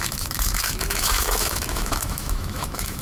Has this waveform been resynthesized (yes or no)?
yes